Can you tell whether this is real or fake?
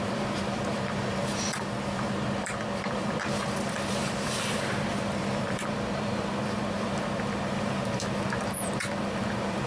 fake